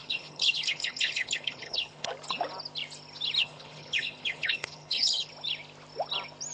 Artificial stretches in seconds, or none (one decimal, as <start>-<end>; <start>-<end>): 0.0-2.1; 3.4-5.3